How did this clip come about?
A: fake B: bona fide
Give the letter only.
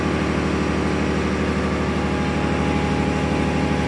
B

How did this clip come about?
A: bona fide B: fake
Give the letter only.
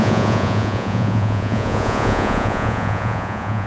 B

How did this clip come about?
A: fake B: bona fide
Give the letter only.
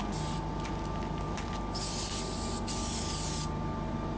B